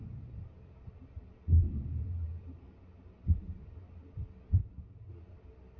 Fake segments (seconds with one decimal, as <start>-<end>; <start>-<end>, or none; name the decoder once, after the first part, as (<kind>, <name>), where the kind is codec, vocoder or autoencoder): none